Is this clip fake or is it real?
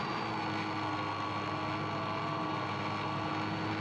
real